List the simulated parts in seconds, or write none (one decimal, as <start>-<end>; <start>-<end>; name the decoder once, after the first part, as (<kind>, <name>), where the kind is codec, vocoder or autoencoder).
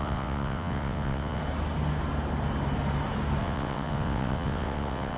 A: 0.0-1.4 (vocoder, WaveNeXt); 3.4-5.2